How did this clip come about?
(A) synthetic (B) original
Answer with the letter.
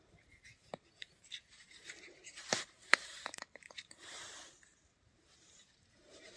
A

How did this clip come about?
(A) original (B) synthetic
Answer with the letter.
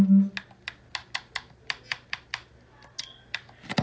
A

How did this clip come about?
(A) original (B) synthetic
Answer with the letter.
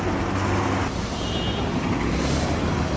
A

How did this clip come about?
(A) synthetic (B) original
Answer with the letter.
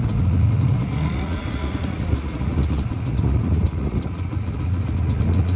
A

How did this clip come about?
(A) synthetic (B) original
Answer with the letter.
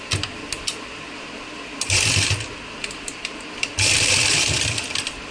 B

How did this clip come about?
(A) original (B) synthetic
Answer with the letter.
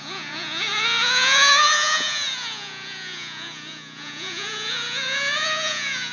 B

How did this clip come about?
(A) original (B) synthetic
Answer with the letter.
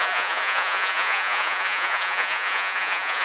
B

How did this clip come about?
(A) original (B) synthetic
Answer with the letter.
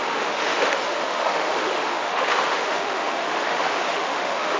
B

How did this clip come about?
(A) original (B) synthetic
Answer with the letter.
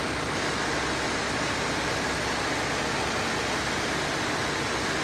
A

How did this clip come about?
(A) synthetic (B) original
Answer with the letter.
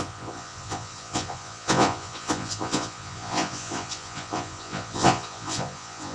A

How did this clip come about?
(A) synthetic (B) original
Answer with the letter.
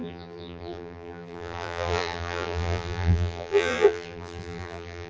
A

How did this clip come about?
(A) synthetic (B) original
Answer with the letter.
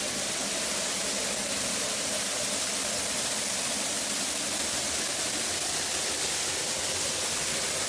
B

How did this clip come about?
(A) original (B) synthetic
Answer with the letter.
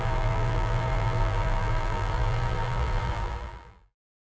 B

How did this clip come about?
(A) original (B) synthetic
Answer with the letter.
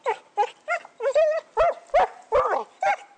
A